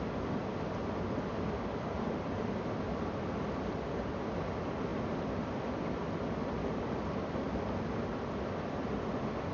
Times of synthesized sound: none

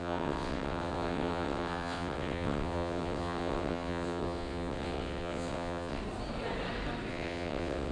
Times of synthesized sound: 0.0-6.0 (vocoder, WaveNeXt); 7.1-7.9

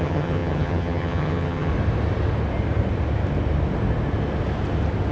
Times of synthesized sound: 0.0-1.7 (vocoder, HiFi-GAN)